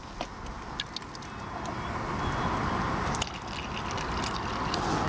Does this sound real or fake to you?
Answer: real